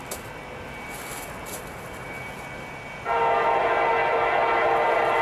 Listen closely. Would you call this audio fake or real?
real